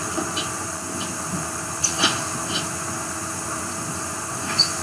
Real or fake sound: fake